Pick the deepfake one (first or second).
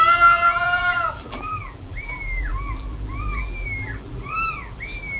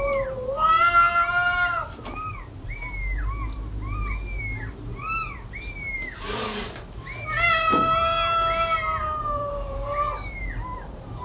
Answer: first